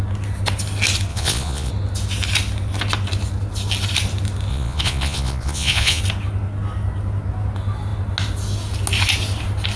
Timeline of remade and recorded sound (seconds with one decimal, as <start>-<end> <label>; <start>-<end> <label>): 0.0-1.1 recorded; 1.1-1.7 remade; 1.7-4.5 recorded; 4.5-6.0 remade; 6.0-9.8 recorded